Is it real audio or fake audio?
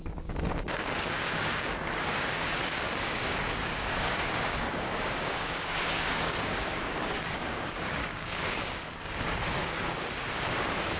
fake